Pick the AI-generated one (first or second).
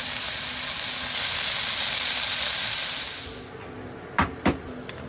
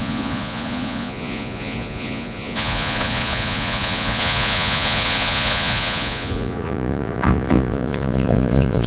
second